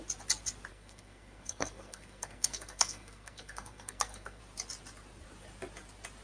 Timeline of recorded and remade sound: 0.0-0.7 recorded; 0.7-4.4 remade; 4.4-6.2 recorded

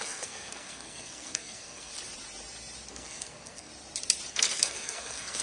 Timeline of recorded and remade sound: 0.0-1.9 remade; 1.9-2.9 recorded; 2.9-3.7 remade; 3.7-4.3 recorded; 4.3-5.4 remade

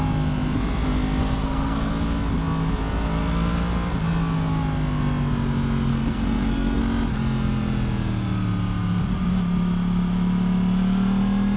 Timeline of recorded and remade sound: 0.0-1.2 recorded; 1.2-1.9 remade; 1.9-5.9 recorded; 5.9-6.8 remade; 6.8-11.6 recorded